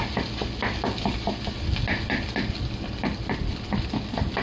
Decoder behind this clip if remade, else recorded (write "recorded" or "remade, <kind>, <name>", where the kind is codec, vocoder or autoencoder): recorded